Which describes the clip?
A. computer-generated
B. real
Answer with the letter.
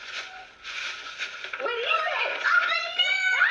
A